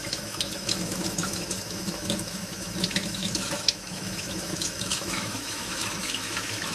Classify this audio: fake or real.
fake